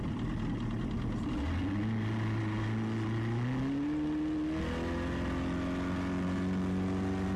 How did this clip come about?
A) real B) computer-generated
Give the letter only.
A